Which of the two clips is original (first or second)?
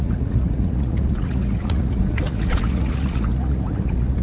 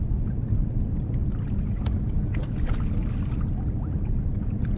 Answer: second